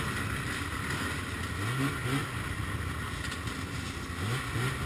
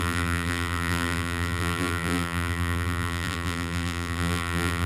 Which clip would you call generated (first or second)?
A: second